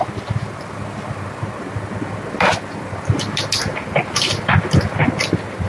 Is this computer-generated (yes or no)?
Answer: no